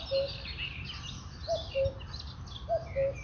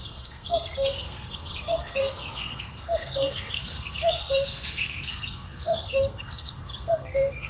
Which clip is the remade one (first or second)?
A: second